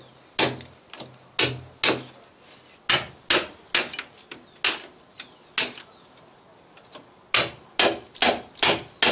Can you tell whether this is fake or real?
real